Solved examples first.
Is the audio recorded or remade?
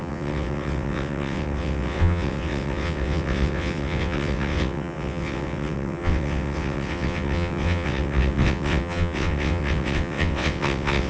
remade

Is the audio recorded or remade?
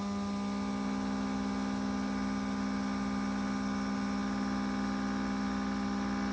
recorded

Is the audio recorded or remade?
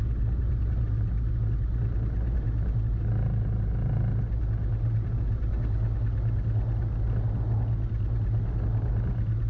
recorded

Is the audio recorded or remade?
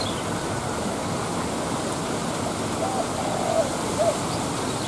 recorded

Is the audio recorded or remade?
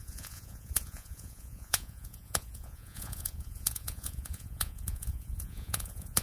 remade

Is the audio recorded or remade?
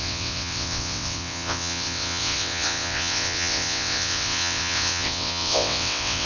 remade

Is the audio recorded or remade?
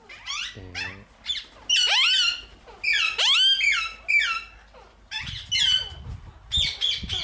recorded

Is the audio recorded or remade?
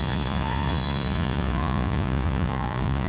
remade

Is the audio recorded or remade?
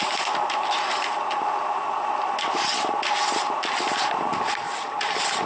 recorded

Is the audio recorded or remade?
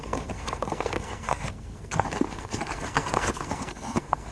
remade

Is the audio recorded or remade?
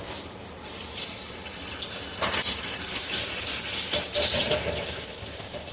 recorded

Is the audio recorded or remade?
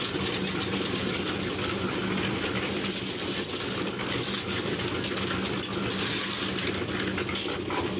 recorded